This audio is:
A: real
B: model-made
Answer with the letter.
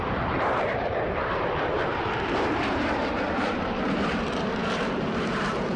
B